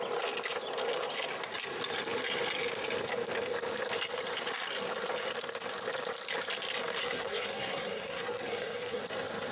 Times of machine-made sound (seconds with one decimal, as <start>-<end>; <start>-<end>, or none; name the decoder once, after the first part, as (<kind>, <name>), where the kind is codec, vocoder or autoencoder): 7.0-9.0 (codec, SNAC)